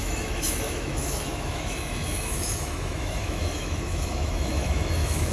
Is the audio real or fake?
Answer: fake